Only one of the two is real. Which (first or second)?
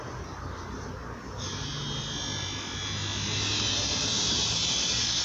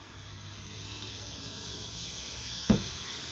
first